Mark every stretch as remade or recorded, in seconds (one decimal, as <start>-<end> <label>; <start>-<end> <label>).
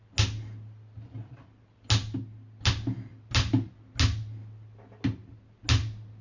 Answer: 0.0-6.2 recorded